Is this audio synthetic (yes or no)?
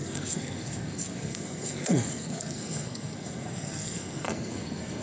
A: yes